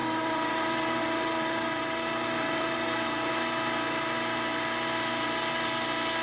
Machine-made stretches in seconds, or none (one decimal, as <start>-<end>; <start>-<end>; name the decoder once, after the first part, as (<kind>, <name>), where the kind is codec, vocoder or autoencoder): 0.0-3.3 (vocoder, BigVGAN v2)